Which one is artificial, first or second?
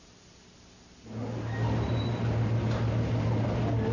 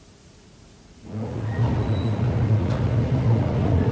second